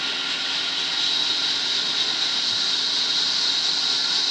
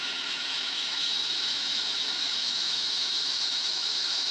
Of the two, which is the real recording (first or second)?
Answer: first